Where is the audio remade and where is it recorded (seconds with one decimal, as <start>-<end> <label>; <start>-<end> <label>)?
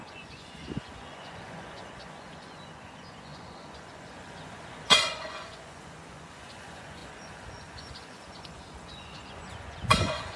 0.0-10.4 remade